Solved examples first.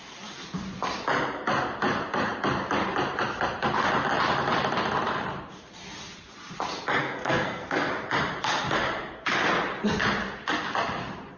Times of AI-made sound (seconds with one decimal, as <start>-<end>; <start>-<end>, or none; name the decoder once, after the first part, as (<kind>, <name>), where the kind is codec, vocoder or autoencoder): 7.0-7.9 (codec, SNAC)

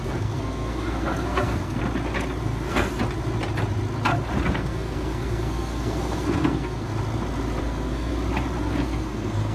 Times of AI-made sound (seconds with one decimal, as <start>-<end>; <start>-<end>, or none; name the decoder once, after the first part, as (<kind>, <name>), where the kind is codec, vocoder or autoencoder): 0.0-1.8 (codec, SNAC); 2.4-2.9; 4.5-6.9; 7.6-8.1; 8.6-9.5

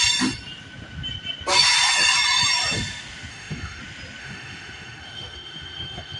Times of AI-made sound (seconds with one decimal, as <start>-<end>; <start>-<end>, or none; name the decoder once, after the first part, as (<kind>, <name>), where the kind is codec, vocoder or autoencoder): 3.3-3.8 (autoencoder, DAC-VAE); 4.2-6.2